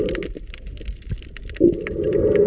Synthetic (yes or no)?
no